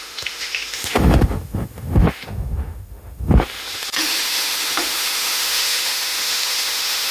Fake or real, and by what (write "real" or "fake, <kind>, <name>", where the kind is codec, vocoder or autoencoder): fake, autoencoder, DAC-VAE